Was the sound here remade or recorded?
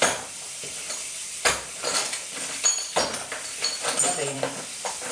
remade